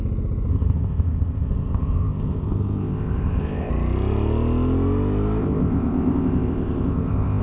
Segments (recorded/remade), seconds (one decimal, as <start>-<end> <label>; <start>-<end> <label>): 0.0-0.5 recorded; 0.5-3.7 remade; 3.7-5.4 recorded; 5.4-7.4 remade